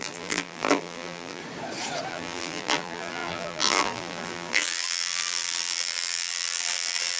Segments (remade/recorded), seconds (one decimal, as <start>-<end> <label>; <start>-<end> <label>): 0.0-1.4 remade; 1.4-2.1 recorded; 2.1-7.2 remade